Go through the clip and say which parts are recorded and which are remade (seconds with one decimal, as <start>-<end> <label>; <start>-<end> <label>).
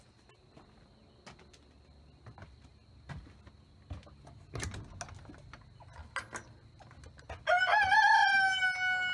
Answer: 0.0-9.1 recorded